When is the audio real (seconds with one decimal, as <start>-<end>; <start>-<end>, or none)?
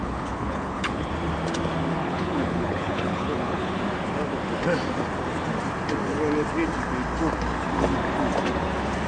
1.1-2.0; 3.8-9.1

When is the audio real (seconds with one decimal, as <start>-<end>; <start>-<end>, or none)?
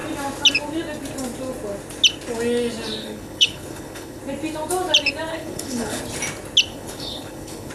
0.0-3.0; 4.2-5.3; 6.0-6.7